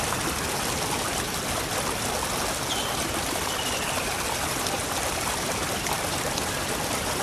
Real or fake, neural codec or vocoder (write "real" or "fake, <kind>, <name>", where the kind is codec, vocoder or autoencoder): real